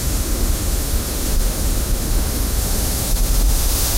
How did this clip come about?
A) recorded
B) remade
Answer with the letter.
B